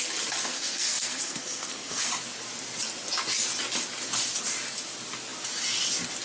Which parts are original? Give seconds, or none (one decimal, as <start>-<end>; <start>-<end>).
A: 0.0-0.5; 2.1-6.2